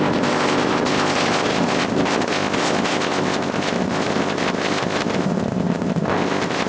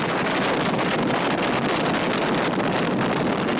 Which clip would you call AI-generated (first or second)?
first